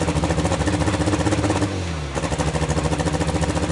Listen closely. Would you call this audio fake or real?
real